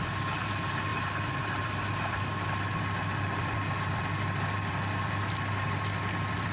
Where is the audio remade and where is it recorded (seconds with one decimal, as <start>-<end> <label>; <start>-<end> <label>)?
0.0-6.5 recorded